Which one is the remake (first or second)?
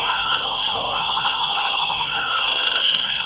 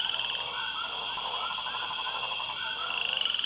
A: first